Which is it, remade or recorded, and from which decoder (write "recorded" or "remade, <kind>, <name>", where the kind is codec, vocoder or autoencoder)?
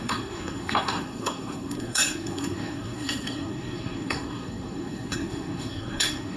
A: remade, codec, SNAC